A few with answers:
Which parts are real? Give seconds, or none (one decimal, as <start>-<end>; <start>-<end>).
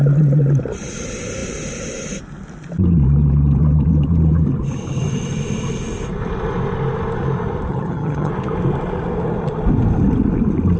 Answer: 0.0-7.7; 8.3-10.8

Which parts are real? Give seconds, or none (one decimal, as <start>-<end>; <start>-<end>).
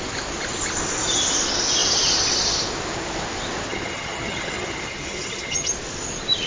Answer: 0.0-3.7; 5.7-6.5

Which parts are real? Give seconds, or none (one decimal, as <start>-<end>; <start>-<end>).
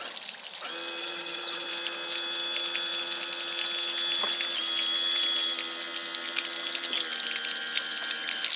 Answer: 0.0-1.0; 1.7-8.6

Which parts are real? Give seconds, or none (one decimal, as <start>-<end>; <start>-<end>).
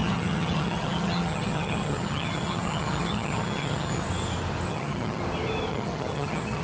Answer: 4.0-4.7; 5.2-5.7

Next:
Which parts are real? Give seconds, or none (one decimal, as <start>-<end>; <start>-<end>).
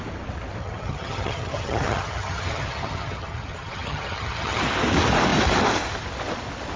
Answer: 0.0-0.6; 4.6-6.8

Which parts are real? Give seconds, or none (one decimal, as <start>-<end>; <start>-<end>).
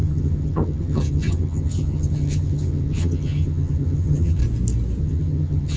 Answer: 4.4-5.0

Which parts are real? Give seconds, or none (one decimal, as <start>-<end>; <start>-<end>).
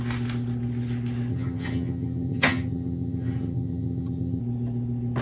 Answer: 0.0-1.3; 4.4-5.2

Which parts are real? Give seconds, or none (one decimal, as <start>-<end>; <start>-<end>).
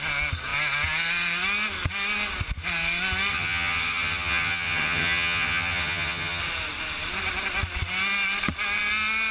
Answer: 0.0-3.3; 6.4-9.3